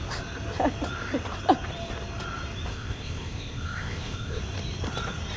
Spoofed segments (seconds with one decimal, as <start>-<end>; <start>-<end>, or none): 2.7-4.4